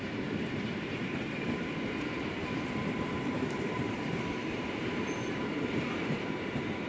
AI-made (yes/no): yes